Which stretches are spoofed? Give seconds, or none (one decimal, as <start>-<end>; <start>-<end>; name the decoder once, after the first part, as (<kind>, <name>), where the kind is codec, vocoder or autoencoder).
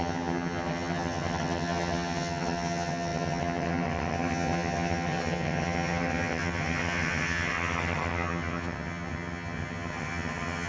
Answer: 0.0-10.7 (vocoder, HiFi-GAN)